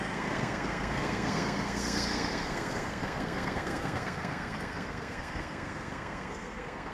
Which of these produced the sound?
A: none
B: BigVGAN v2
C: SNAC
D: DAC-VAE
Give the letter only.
C